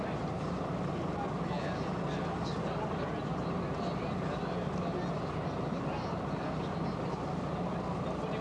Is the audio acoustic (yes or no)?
yes